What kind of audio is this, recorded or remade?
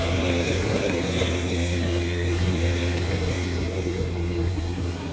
remade